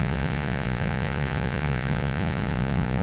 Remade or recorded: remade